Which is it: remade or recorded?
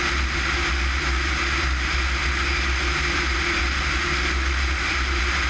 recorded